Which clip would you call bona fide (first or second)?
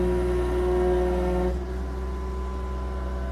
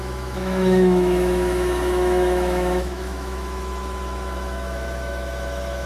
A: first